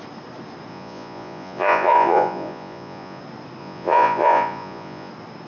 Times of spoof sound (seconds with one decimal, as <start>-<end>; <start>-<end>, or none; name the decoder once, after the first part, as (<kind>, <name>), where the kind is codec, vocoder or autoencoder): 0.7-3.2 (vocoder, Vocos); 3.6-5.1